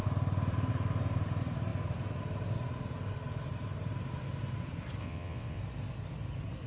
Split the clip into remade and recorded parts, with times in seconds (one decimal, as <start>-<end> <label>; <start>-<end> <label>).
0.0-5.0 recorded; 5.0-5.6 remade; 5.6-6.7 recorded